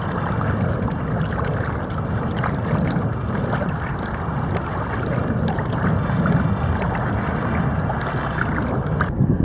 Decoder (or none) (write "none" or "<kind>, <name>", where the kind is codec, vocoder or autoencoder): none